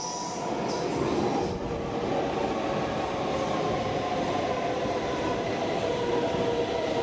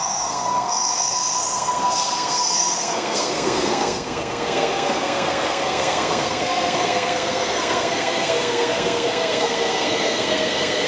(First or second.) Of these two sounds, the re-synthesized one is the second